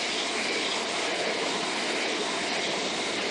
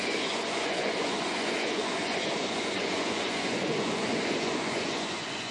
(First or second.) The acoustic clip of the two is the first